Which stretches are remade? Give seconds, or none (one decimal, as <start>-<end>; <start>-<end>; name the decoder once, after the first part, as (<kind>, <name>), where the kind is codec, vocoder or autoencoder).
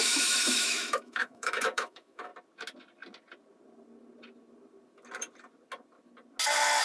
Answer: 0.0-2.3 (autoencoder, DAC-VAE)